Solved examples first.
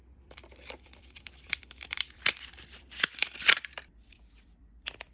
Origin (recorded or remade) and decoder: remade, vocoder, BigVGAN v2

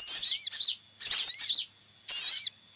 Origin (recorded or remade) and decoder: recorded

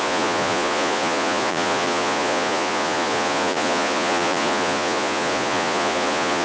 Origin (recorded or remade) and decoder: remade, vocoder, Vocos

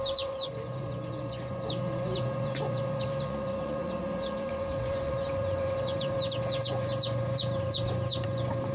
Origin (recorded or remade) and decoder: remade, vocoder, Vocos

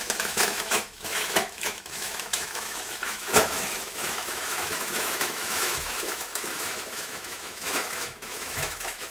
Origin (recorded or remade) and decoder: remade, autoencoder, DAC-VAE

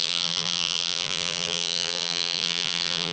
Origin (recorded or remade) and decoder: remade, vocoder, BigVGAN v2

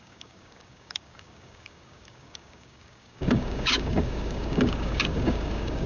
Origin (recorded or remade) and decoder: remade, codec, DAC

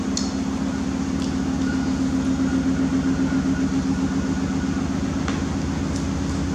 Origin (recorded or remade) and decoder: recorded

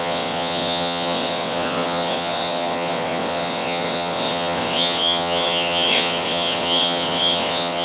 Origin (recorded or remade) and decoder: remade, vocoder, WaveNeXt